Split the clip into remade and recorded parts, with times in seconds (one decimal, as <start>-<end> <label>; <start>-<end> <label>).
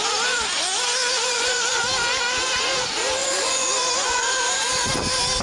0.0-1.1 recorded; 1.1-1.8 remade; 1.8-3.2 recorded; 3.2-4.3 remade; 4.3-5.4 recorded